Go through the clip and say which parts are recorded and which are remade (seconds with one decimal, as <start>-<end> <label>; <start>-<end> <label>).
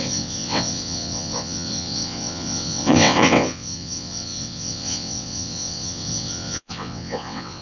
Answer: 0.0-7.6 remade